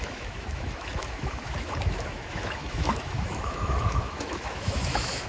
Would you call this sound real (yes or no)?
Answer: no